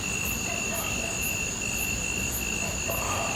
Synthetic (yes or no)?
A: no